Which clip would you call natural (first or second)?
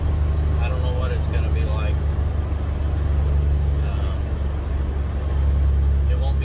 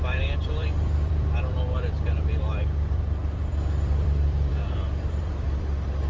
first